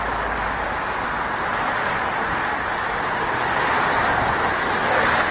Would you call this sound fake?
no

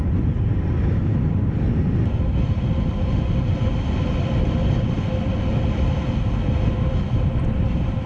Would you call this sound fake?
no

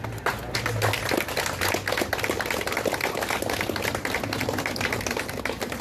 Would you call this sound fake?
no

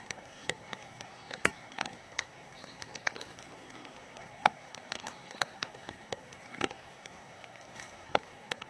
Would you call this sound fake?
yes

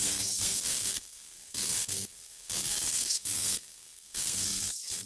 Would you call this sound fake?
yes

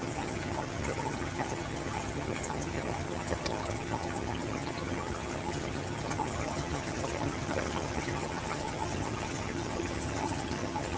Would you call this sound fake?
yes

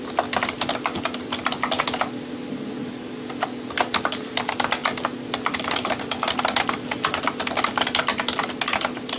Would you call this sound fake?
no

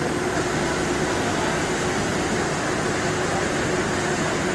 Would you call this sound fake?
no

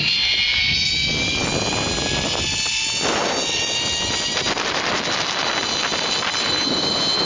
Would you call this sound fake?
no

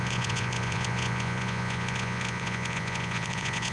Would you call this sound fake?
yes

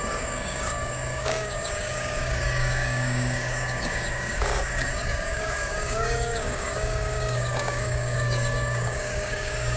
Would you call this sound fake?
yes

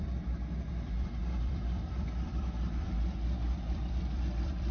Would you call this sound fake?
yes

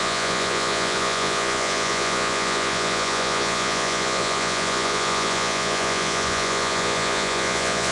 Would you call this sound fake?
yes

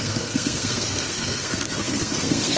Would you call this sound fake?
yes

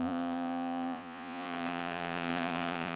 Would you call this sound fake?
yes